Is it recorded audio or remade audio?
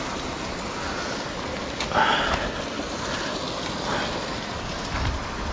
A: recorded